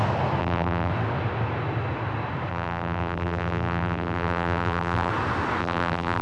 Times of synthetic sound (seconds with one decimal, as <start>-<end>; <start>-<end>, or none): 0.4-0.9; 2.5-5.1; 5.6-6.2